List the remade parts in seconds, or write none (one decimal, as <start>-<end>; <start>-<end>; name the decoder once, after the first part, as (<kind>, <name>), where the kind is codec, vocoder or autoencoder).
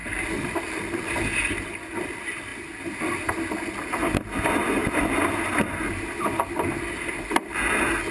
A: 0.0-1.1 (vocoder, BigVGAN v2)